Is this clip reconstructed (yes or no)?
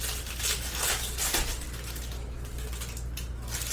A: no